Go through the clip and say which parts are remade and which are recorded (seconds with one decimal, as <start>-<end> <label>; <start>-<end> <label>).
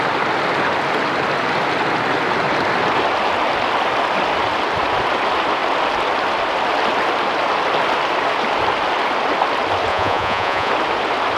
0.0-9.9 recorded; 9.9-10.7 remade; 10.7-11.4 recorded